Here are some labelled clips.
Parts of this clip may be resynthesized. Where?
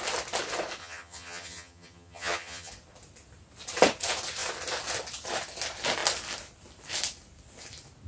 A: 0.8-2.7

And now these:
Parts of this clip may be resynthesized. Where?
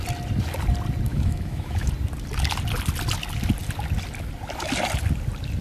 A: 1.1-1.9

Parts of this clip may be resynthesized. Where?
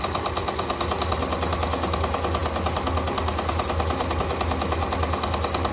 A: none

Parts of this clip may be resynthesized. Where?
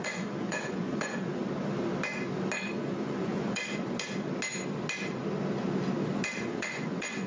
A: 0.0-1.4; 2.6-3.6; 6.4-7.3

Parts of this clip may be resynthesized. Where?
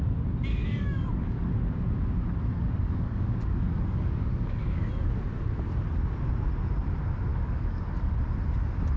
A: 0.5-1.5; 2.5-4.9; 7.3-8.2